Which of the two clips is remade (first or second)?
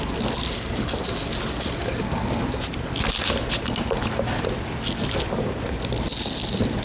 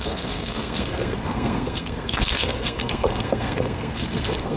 second